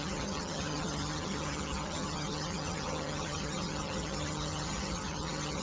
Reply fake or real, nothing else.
fake